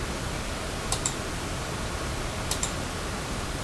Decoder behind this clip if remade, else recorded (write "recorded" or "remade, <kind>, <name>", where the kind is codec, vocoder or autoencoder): recorded